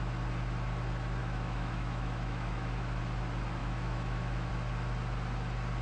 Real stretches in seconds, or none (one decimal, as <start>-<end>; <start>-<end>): 0.0-1.2; 3.0-3.6; 4.5-5.8